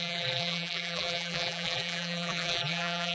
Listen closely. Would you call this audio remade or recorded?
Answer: remade